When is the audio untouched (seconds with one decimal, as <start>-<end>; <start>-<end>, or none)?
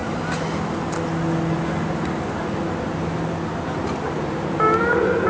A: 0.0-5.3